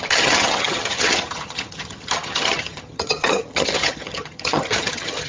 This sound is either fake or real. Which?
fake